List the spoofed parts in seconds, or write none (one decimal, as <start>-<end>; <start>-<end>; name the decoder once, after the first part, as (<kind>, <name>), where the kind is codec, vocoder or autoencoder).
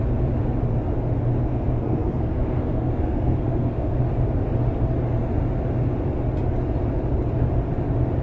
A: 1.4-4.0 (codec, SNAC)